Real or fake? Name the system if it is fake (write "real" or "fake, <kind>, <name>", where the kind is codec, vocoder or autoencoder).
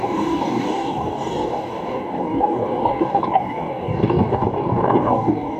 fake, codec, DAC